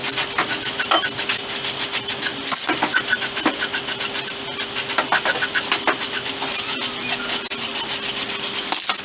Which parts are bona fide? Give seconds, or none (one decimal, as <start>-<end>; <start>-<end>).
0.0-9.0